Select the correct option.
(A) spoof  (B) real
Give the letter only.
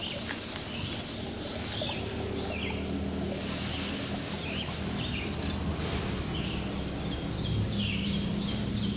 B